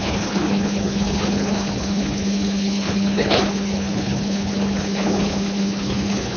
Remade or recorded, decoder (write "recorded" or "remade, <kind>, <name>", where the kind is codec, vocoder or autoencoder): remade, codec, HILCodec